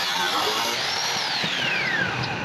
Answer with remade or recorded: remade